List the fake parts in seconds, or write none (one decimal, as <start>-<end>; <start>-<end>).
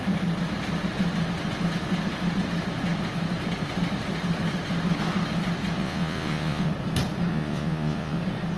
5.8-6.7; 7.3-8.2